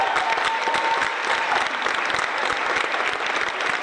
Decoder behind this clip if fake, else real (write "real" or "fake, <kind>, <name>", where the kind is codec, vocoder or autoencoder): real